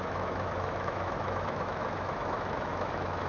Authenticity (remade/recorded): remade